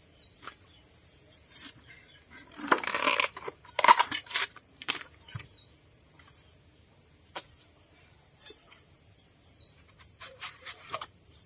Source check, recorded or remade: remade